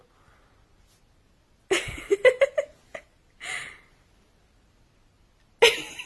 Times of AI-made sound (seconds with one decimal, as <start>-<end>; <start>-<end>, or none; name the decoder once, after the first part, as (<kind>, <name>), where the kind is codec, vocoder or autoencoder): none